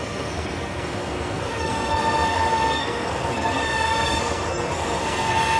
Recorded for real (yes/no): no